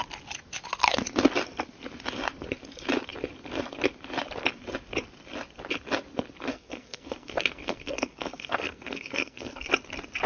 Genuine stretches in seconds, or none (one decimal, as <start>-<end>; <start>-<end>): 0.0-6.5; 9.7-10.3